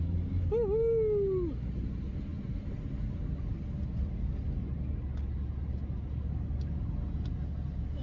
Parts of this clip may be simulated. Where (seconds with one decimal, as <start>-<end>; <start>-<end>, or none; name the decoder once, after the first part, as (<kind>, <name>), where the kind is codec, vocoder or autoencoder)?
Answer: none